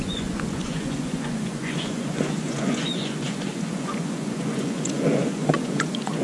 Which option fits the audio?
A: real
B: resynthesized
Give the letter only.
B